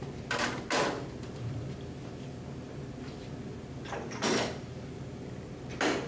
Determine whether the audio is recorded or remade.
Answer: recorded